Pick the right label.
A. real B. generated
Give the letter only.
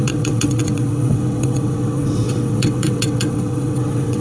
B